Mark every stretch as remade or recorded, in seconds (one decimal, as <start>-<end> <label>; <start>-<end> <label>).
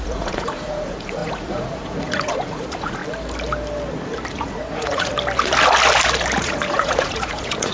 0.0-3.0 remade; 3.0-4.3 recorded; 4.3-5.1 remade; 5.1-6.4 recorded; 6.4-7.7 remade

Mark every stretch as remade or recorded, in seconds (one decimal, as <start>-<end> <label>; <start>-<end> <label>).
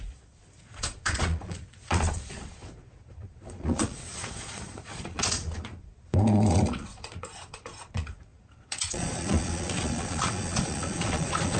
0.0-11.6 remade